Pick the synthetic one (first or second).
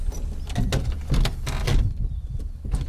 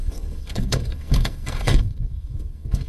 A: second